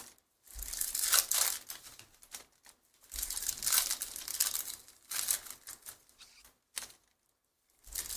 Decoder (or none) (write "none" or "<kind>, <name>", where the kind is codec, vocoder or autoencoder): none